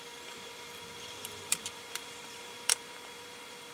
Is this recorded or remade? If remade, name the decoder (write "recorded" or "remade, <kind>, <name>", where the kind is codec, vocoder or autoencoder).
remade, vocoder, BigVGAN v2